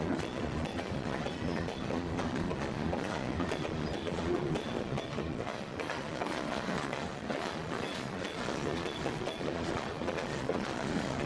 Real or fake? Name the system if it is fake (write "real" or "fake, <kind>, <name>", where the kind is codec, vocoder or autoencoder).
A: fake, vocoder, Vocos